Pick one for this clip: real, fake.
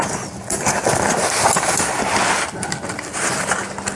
real